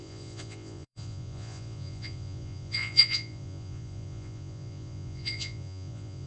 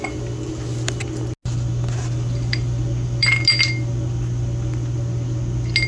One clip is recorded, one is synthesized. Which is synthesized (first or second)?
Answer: first